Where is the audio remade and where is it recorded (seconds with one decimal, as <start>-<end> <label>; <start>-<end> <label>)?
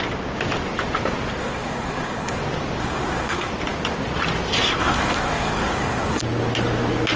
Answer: 0.0-1.4 recorded; 1.4-2.4 remade; 2.4-2.8 recorded; 2.8-3.5 remade; 3.5-4.8 recorded; 4.8-6.2 remade; 6.2-7.2 recorded